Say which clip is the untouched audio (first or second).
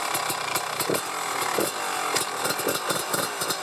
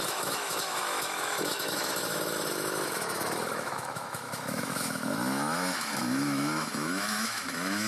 first